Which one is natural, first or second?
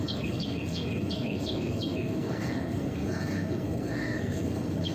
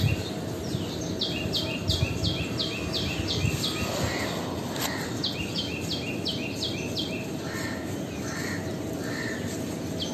second